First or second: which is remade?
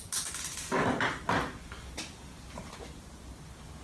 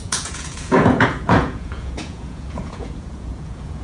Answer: second